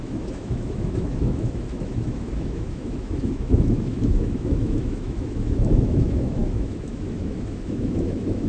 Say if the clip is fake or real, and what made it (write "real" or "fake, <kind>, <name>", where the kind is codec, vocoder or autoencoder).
fake, autoencoder, DAC-VAE